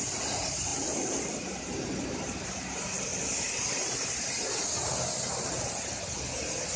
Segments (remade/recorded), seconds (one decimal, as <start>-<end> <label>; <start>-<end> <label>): 0.0-0.7 recorded; 0.7-1.9 remade; 1.9-6.8 recorded